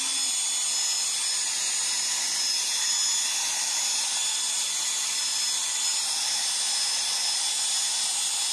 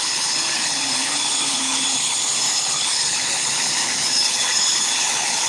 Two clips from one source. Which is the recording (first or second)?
first